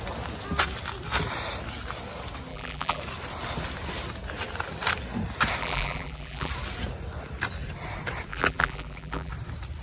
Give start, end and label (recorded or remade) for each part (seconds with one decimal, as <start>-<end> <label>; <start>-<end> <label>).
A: 0.0-2.5 recorded; 2.5-3.0 remade; 3.0-5.6 recorded; 5.6-6.5 remade; 6.5-8.3 recorded; 8.3-9.3 remade; 9.3-9.8 recorded